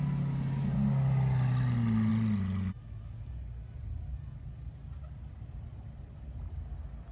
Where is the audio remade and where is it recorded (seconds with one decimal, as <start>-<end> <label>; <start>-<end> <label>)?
0.0-7.1 recorded